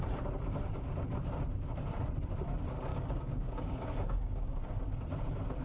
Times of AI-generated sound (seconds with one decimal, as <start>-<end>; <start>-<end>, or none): 2.9-4.8